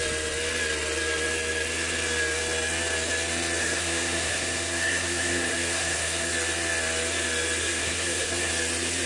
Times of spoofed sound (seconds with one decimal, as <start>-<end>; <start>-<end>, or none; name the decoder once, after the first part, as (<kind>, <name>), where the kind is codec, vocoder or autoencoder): 3.6-6.3 (codec, SNAC); 7.6-8.5